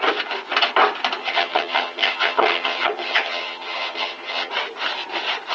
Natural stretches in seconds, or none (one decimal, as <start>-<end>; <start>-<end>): 0.0-1.2; 4.5-5.5